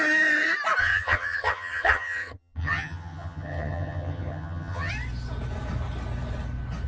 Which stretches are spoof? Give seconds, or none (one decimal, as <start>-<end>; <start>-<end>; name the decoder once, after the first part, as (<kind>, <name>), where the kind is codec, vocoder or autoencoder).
0.8-4.9 (vocoder, HiFi-GAN)